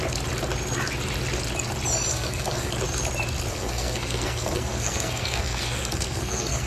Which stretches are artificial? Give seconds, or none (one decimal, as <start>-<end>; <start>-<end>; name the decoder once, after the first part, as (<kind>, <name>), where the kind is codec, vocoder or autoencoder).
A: 2.1-2.7 (codec, SNAC); 3.5-6.7

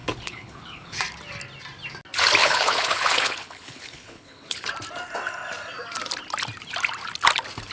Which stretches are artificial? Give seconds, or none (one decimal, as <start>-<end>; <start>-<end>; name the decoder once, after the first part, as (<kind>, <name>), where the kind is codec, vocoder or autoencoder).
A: 0.0-1.0 (codec, HILCodec); 2.4-4.7

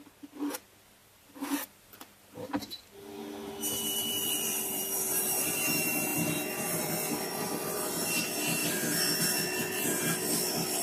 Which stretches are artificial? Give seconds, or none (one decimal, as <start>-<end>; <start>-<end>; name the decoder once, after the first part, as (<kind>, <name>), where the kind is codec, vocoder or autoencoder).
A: 1.0-5.4 (vocoder, BigVGAN v2); 6.1-8.2; 8.6-9.2

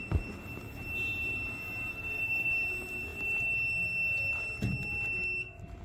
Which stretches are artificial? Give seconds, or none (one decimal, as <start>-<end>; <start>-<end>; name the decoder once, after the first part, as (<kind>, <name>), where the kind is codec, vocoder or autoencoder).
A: 1.9-2.5 (codec, SNAC)

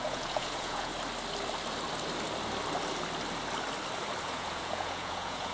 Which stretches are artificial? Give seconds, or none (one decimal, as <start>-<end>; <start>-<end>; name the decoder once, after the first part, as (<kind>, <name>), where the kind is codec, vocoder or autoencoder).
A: 0.0-0.9 (vocoder, Vocos); 4.2-5.5

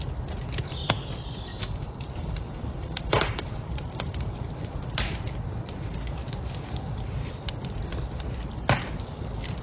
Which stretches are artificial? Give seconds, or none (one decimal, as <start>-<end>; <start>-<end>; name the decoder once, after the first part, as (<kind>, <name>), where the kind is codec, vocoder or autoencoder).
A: 1.5-4.4 (vocoder, BigVGAN v2)

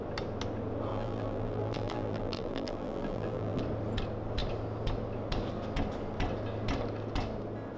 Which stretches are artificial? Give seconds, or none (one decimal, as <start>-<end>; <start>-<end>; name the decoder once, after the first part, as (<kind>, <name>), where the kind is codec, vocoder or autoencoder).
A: 0.9-3.6 (vocoder, BigVGAN v2)

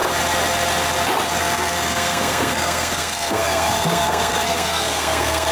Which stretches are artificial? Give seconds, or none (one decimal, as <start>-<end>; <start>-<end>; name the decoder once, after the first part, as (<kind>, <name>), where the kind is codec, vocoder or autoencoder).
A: 1.4-5.5 (codec, SNAC)